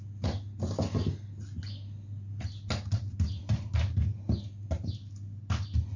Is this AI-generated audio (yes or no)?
no